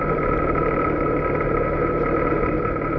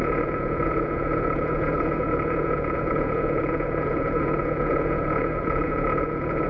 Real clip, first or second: first